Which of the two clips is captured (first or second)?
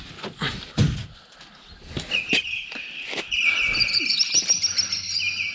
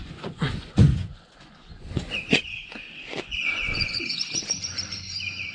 first